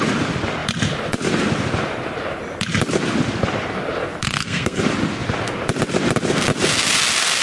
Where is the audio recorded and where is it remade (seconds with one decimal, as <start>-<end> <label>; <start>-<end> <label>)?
0.0-4.2 recorded; 4.2-4.8 remade; 4.8-7.4 recorded